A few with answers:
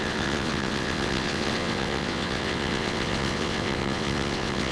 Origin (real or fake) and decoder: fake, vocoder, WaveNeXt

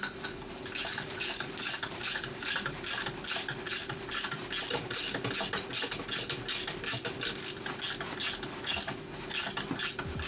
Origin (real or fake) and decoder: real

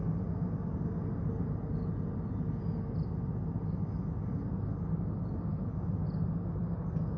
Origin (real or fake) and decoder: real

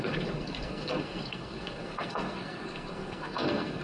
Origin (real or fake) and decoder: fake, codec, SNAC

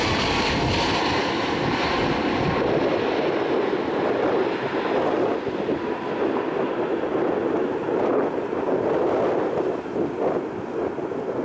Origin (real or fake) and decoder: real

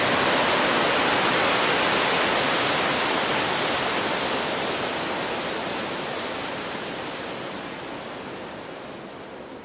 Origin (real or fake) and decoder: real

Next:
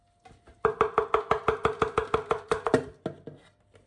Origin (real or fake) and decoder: real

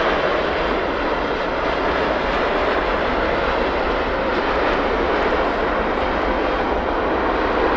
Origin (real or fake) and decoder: real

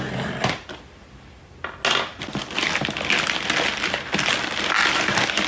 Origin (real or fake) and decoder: real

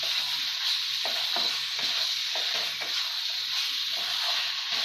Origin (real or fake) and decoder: real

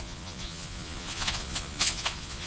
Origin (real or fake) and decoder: fake, vocoder, Vocos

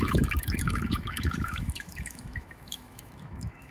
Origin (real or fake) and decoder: fake, autoencoder, DAC-VAE